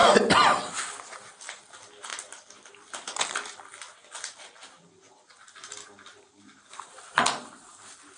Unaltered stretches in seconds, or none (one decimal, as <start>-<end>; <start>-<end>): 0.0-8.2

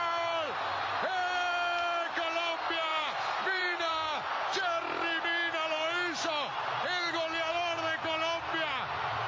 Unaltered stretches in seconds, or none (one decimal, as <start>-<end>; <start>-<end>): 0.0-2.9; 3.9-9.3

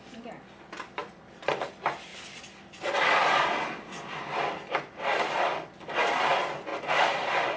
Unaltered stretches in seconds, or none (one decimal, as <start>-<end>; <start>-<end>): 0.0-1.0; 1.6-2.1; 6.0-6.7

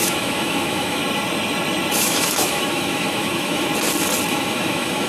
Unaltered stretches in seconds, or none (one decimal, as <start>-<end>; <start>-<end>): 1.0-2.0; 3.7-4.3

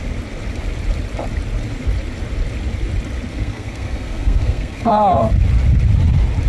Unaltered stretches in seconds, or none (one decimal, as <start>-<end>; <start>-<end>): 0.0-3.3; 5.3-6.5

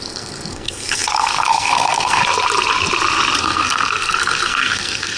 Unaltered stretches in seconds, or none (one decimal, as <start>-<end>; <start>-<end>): 2.2-3.4

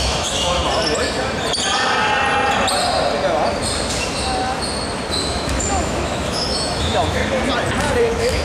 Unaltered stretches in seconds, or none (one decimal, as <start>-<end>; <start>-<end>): 0.6-5.2; 7.2-8.0